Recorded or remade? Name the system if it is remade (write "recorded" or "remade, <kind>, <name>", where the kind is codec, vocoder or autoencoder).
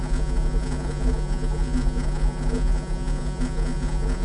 remade, vocoder, Vocos